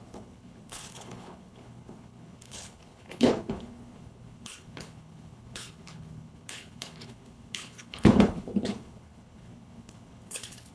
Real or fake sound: fake